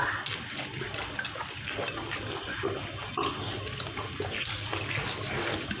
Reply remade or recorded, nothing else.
recorded